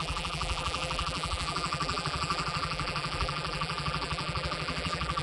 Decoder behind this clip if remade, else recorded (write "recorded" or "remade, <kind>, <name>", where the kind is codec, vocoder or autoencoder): remade, vocoder, BigVGAN v2